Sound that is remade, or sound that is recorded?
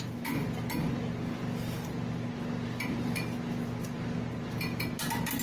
recorded